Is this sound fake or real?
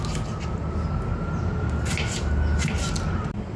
real